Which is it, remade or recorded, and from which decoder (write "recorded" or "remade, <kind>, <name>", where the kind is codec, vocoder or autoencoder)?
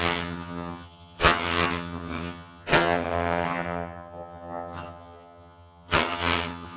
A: remade, vocoder, HiFi-GAN